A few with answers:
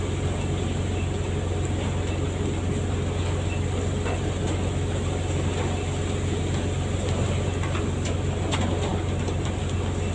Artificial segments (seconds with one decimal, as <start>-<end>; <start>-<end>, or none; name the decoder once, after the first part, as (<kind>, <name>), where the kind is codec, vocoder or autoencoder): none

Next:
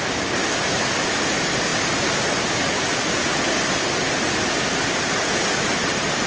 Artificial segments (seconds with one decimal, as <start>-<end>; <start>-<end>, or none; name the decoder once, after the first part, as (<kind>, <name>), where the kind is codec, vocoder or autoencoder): none

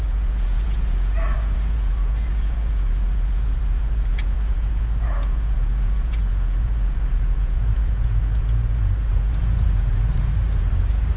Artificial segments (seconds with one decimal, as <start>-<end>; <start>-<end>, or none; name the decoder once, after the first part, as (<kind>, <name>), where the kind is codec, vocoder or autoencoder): 0.0-11.2 (vocoder, Vocos)